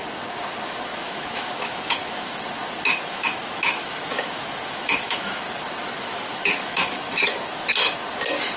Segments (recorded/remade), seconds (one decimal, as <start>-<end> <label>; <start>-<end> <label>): 0.0-0.9 recorded; 0.9-2.4 remade; 2.4-2.9 recorded; 2.9-5.4 remade; 5.4-6.0 recorded; 6.0-7.0 remade; 7.0-8.6 recorded